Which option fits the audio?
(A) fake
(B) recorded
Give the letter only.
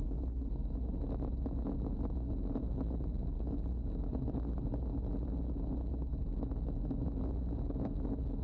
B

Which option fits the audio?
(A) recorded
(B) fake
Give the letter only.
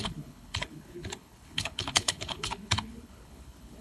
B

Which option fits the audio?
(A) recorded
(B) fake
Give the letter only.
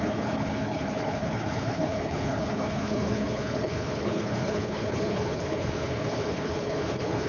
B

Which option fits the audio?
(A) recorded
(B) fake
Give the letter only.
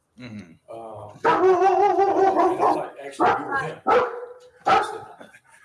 A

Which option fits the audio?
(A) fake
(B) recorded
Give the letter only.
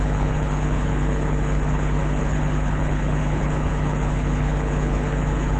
A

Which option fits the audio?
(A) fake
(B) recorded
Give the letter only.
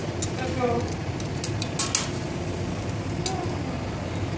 B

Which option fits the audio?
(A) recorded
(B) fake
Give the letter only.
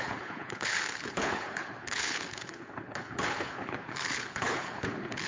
B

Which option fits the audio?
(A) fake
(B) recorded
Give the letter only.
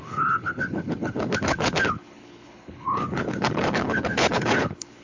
A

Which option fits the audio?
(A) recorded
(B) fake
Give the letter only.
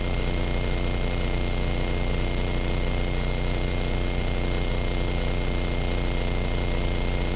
A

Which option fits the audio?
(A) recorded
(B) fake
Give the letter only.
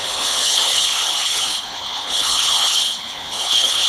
B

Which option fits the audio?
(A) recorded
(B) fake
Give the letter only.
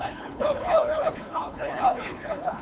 B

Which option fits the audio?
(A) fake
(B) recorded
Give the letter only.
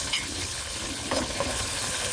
A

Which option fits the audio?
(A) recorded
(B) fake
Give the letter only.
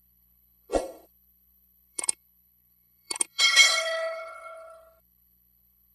B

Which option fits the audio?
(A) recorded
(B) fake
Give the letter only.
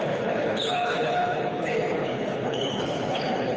B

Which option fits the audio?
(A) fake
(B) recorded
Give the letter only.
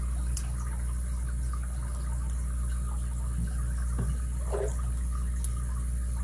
B